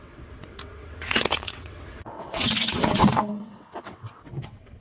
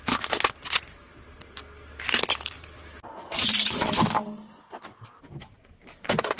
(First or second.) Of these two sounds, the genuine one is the second